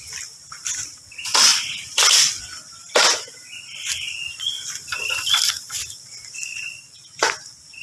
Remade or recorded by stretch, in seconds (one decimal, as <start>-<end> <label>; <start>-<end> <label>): 0.0-7.8 remade